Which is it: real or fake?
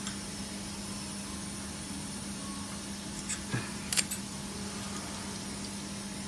real